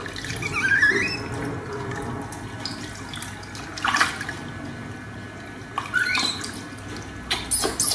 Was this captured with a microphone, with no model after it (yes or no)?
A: yes